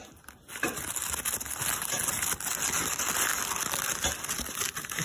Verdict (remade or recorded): recorded